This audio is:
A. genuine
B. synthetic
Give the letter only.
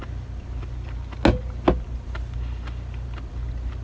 A